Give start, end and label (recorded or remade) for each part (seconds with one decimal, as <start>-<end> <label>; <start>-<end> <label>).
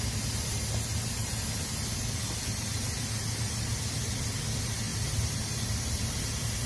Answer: 0.0-6.7 recorded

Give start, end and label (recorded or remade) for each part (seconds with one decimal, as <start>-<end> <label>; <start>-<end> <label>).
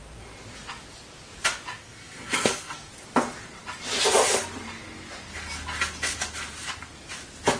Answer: 0.0-1.8 recorded; 1.8-2.9 remade; 2.9-7.6 recorded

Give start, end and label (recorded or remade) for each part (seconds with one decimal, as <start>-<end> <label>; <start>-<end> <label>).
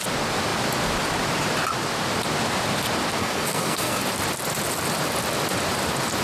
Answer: 0.0-3.2 recorded; 3.2-4.0 remade; 4.0-6.2 recorded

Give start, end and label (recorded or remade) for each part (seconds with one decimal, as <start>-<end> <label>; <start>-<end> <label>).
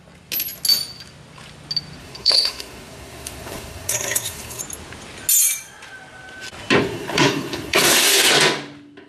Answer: 0.0-2.0 recorded; 2.0-4.6 remade; 4.6-6.8 recorded; 6.8-8.3 remade; 8.3-9.1 recorded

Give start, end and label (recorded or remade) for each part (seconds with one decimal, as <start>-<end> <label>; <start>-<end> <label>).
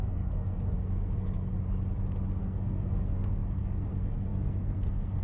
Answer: 0.0-1.5 remade; 1.5-2.4 recorded; 2.4-5.2 remade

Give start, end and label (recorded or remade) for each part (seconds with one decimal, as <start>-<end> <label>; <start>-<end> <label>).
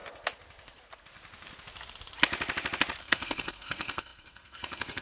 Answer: 0.0-3.0 recorded; 3.0-5.0 remade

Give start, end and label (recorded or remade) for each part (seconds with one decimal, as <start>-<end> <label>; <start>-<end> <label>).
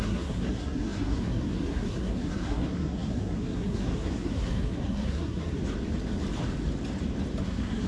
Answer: 0.0-5.6 remade; 5.6-7.4 recorded; 7.4-7.9 remade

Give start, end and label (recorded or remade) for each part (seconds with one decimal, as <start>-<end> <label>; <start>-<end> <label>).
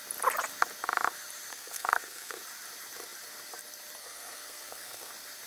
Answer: 0.0-1.5 recorded; 1.5-2.4 remade; 2.4-4.0 recorded; 4.0-5.1 remade; 5.1-5.5 recorded